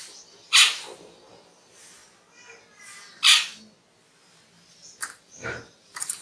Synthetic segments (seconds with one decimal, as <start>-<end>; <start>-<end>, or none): 0.0-2.0; 4.7-6.2